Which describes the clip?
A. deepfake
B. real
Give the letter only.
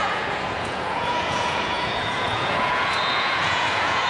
A